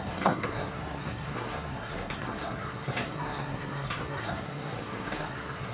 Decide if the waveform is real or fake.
fake